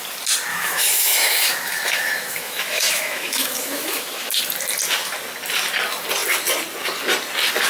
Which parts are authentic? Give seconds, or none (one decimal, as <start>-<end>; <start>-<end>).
0.0-0.5; 4.4-7.7